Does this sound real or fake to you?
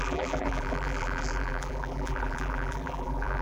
fake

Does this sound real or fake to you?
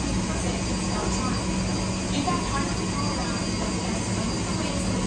real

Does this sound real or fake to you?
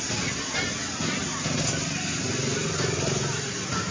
real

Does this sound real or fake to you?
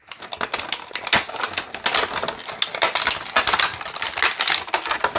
real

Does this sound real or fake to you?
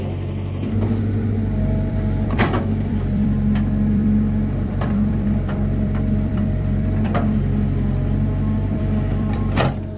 fake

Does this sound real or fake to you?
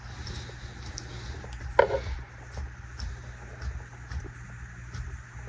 real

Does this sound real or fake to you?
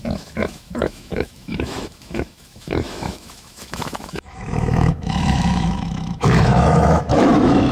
fake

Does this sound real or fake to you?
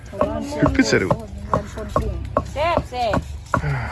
real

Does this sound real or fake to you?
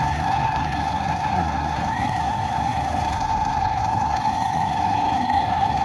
fake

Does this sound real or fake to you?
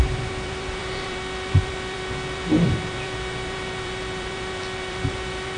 fake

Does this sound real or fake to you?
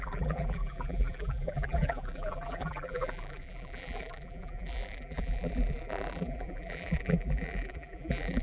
fake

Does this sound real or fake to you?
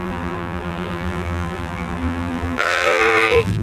fake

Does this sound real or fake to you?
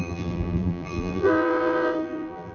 fake